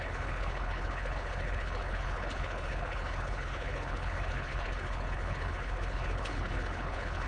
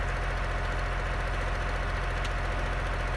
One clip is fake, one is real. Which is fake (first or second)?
first